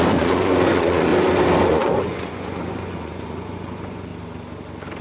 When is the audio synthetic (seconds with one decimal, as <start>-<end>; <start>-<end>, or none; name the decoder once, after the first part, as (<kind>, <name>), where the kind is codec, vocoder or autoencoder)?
0.0-1.1 (vocoder, Vocos); 1.7-4.1